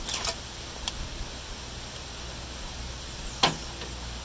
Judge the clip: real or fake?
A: real